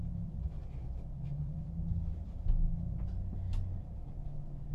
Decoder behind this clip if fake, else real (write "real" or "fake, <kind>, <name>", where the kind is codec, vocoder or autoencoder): real